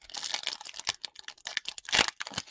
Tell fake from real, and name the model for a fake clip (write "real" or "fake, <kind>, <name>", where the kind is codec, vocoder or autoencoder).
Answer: real